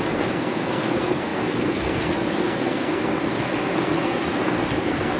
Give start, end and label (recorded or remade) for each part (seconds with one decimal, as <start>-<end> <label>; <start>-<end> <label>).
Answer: 0.0-5.2 remade